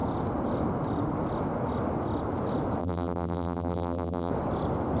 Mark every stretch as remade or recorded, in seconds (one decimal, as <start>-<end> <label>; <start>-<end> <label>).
0.0-2.8 recorded; 2.8-4.3 remade; 4.3-5.0 recorded